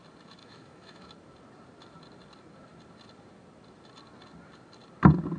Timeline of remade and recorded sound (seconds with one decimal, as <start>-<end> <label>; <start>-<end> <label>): 0.0-0.4 recorded; 0.4-1.1 remade; 1.1-5.4 recorded